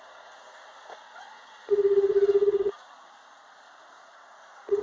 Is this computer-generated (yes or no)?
yes